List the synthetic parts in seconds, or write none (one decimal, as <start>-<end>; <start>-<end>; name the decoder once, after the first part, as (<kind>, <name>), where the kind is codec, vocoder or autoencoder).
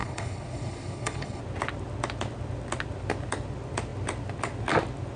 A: 0.0-1.4 (codec, HILCodec)